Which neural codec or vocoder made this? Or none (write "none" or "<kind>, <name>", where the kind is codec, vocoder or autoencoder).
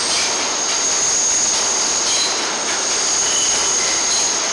none